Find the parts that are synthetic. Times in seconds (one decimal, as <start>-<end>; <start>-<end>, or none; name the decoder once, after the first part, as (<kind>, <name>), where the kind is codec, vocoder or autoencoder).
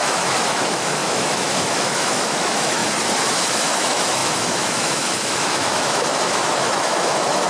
0.0-2.8 (autoencoder, DAC-VAE); 3.3-7.5